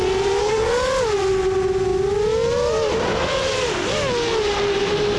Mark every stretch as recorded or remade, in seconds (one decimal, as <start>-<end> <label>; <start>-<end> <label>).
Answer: 0.0-0.4 recorded; 0.4-0.9 remade; 0.9-5.2 recorded